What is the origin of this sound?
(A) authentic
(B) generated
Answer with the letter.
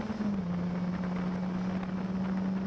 A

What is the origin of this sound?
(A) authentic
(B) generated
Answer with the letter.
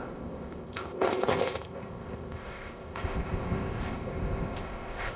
B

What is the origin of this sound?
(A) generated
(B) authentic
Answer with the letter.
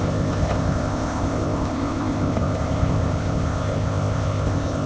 A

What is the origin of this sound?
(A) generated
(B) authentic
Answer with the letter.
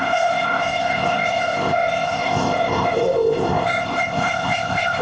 A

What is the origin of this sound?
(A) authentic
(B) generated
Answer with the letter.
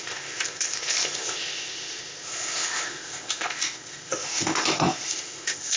B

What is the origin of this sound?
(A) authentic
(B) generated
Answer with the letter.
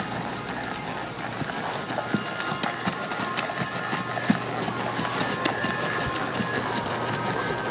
A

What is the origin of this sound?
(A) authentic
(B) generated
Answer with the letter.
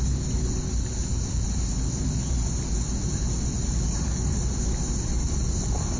A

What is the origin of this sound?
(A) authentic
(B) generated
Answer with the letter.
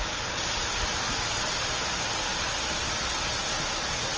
A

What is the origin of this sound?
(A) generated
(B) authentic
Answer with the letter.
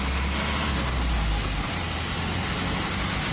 B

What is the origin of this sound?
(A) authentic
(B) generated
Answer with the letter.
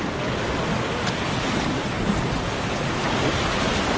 A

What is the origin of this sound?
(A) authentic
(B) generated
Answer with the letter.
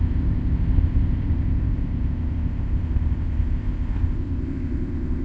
B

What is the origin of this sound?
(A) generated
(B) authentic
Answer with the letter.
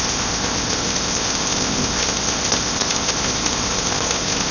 A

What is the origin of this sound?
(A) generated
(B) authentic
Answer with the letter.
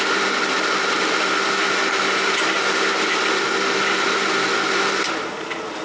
B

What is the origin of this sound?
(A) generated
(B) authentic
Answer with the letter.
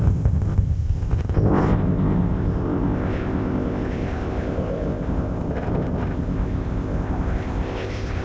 A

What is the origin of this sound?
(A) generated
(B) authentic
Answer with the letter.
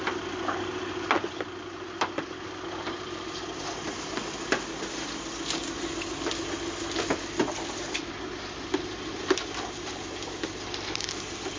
B